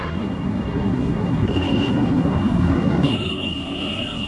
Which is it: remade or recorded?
remade